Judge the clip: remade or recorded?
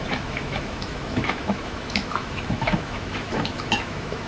remade